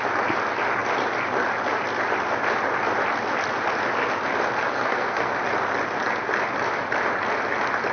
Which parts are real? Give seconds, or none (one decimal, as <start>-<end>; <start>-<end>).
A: 0.0-4.7; 5.3-7.9